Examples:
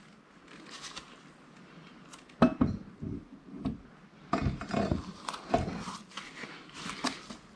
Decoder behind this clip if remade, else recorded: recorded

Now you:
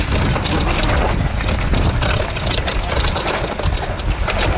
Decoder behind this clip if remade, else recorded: recorded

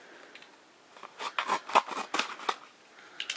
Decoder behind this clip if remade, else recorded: recorded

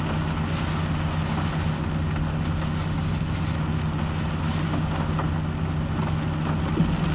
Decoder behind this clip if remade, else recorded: recorded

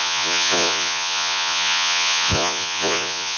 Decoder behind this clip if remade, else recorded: remade, vocoder, Vocos